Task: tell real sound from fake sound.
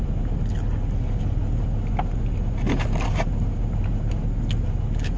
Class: real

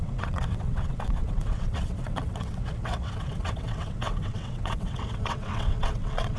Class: fake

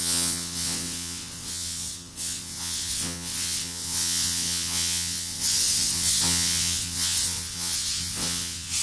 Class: fake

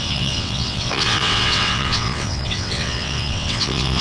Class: fake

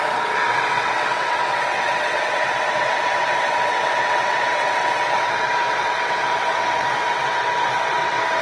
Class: fake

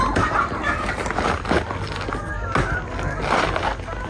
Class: real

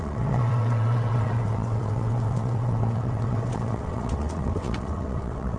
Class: fake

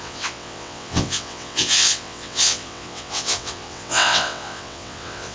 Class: fake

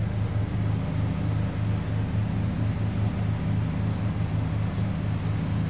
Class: real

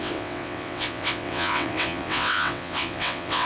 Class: fake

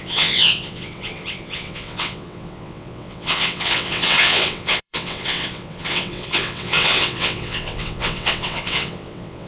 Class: fake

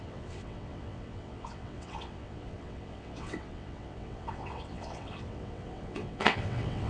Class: fake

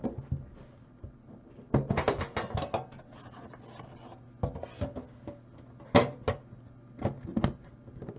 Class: real